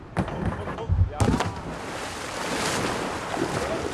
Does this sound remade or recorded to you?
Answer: recorded